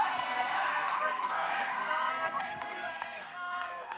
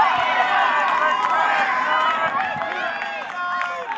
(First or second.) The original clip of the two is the second